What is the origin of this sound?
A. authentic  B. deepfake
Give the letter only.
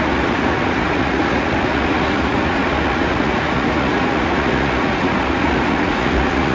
B